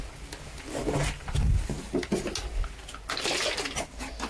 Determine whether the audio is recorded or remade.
recorded